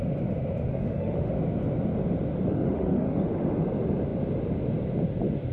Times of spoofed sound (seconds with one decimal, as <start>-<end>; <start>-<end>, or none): 0.7-1.3; 2.5-3.3